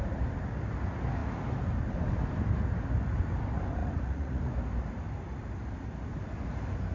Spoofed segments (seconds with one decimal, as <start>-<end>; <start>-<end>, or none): 3.8-4.5